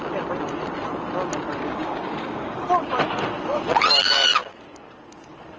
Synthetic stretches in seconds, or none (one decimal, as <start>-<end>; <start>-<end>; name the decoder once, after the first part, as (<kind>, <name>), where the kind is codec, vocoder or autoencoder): 1.6-2.7 (codec, DAC)